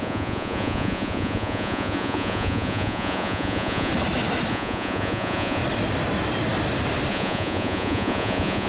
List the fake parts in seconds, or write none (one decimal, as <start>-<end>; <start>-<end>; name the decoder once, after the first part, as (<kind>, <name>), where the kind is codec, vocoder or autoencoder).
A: 0.0-3.9 (vocoder, Vocos); 4.5-5.6; 7.1-8.7